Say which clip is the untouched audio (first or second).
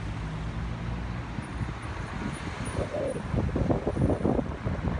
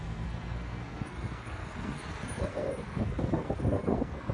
first